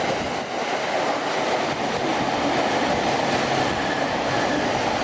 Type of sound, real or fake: real